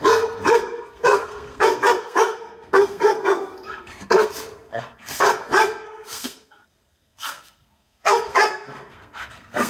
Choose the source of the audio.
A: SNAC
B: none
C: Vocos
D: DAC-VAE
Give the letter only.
A